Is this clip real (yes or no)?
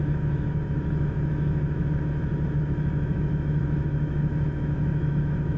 no